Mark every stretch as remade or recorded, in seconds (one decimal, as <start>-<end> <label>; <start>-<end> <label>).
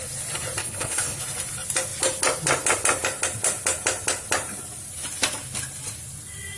0.0-0.6 recorded; 0.6-1.2 remade; 1.2-6.6 recorded